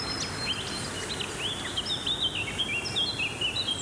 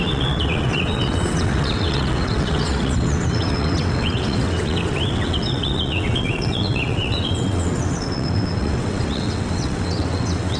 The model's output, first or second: second